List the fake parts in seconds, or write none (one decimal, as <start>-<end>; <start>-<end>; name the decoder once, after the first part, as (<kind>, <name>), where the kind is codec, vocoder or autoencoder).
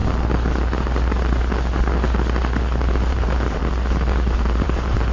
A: 3.1-3.6 (vocoder, BigVGAN v2); 4.3-5.1